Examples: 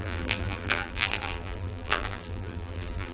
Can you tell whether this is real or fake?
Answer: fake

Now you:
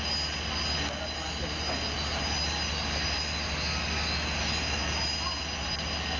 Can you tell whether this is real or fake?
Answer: real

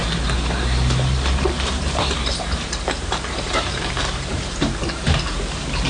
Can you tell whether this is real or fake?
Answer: fake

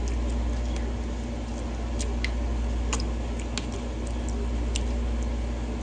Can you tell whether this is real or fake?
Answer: real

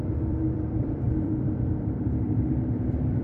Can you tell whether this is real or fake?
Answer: fake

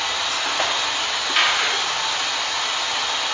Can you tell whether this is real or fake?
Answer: real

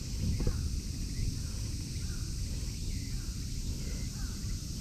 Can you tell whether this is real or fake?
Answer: real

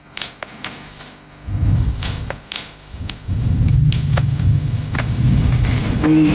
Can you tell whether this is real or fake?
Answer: real